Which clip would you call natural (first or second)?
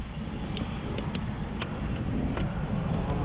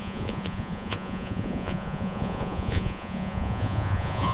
first